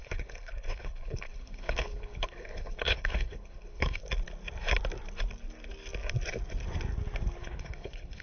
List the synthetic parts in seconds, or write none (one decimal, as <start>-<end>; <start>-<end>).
0.0-4.0; 7.4-8.2